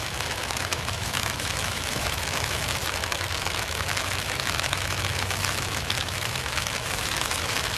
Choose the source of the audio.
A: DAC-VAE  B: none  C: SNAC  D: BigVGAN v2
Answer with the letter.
A